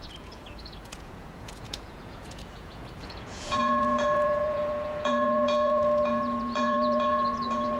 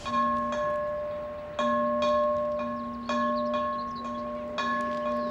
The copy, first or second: first